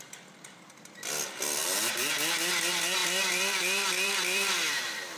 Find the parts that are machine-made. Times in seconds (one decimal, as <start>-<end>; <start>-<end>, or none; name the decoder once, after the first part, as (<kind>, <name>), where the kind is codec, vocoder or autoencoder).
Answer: 1.6-2.3 (vocoder, BigVGAN v2); 3.0-4.8